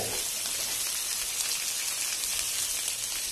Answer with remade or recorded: recorded